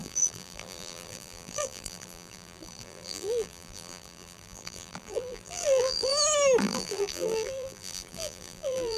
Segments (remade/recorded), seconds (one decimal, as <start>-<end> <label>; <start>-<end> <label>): 0.0-6.1 remade; 6.1-6.6 recorded; 6.6-9.0 remade